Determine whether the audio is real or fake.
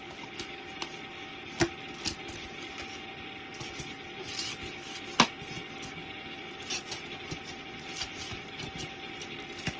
real